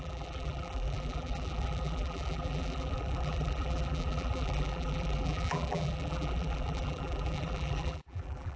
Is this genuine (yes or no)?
no